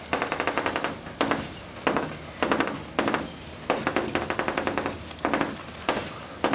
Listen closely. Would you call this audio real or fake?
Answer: real